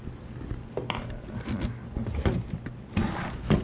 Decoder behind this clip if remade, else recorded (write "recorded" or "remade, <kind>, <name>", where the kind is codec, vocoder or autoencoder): recorded